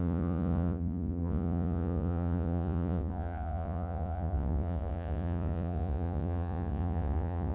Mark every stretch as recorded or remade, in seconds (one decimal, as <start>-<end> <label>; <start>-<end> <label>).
0.0-7.5 remade